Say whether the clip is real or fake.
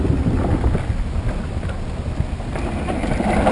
fake